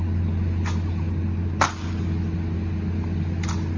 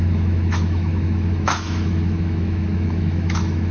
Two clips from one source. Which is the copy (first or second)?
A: second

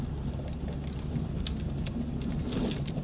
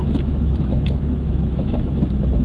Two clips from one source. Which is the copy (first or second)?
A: second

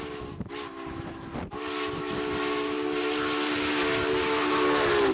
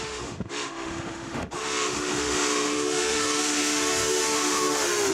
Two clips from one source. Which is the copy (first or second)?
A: second